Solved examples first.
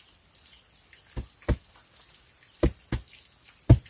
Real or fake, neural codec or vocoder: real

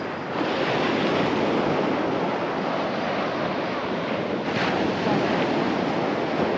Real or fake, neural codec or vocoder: real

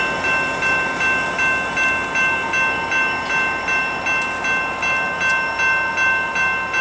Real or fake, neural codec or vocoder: real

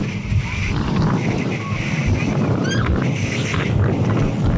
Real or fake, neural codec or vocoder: real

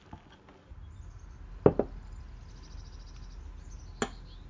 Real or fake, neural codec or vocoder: real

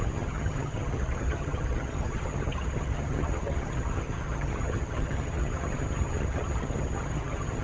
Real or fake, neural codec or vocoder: fake, vocoder, HiFi-GAN